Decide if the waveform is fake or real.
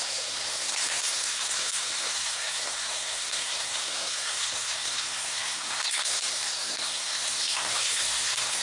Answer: fake